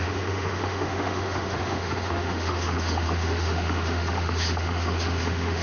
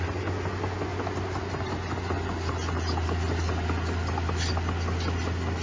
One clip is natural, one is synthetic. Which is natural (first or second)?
second